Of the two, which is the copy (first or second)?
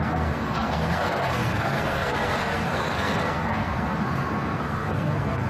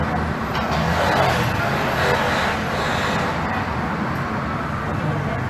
first